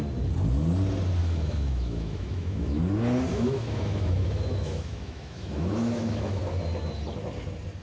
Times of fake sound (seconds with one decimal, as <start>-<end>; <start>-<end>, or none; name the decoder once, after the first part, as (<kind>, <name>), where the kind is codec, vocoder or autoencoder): 1.2-2.8 (autoencoder, DAC-VAE); 3.3-6.4